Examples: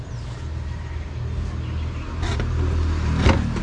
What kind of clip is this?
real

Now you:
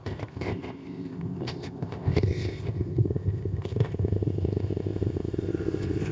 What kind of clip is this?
fake